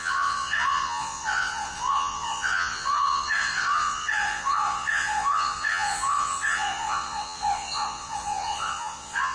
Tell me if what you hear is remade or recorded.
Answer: remade